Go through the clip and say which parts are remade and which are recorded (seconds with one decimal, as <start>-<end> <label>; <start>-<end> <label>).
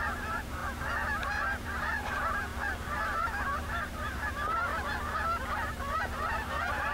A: 0.0-0.6 remade; 0.6-1.4 recorded; 1.4-2.5 remade; 2.5-3.6 recorded; 3.6-4.7 remade; 4.7-6.3 recorded; 6.3-6.9 remade